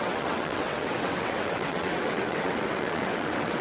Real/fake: fake